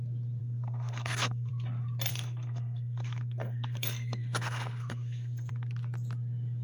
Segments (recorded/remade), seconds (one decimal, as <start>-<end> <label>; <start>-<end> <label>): 0.0-0.4 recorded; 0.4-1.5 remade; 1.5-2.1 recorded; 2.1-5.5 remade; 5.5-6.6 recorded